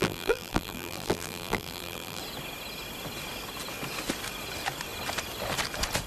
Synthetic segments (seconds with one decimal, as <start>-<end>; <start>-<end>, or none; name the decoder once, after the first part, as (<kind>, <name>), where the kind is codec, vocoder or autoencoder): 0.0-2.2 (vocoder, BigVGAN v2)